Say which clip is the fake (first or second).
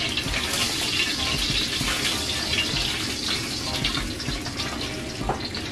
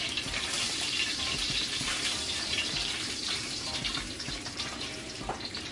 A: second